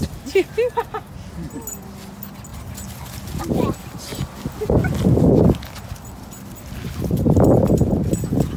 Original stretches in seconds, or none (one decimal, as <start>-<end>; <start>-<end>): 0.0-8.6